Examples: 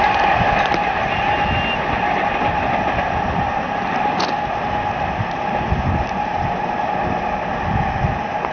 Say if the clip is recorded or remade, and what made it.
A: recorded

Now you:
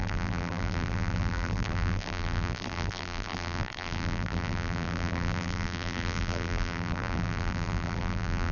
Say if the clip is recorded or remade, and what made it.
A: remade, vocoder, BigVGAN v2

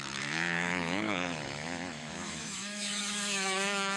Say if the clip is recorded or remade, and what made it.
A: remade, autoencoder, DAC-VAE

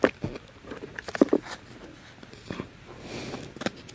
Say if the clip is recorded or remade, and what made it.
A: recorded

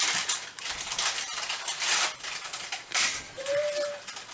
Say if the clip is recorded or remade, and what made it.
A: remade, vocoder, BigVGAN v2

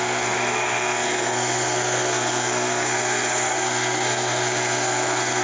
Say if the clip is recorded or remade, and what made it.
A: remade, codec, SNAC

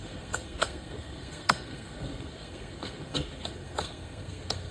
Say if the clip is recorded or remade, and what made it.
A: remade, codec, SNAC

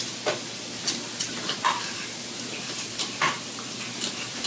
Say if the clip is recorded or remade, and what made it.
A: recorded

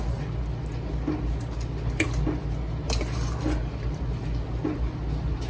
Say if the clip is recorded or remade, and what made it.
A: recorded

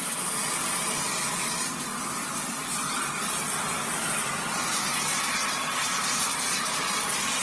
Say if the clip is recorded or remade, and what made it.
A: recorded